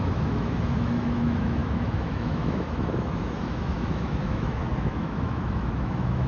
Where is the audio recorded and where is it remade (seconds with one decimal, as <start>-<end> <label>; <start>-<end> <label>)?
0.0-6.3 remade